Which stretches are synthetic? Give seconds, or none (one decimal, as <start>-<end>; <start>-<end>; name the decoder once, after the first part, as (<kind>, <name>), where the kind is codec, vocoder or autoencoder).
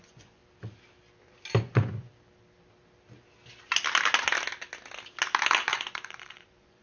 0.0-0.4 (vocoder, Vocos); 1.6-2.1; 5.7-6.8